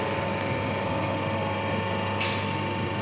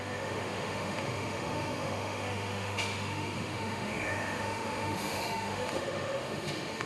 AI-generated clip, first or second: second